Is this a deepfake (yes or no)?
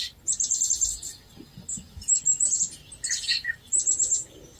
no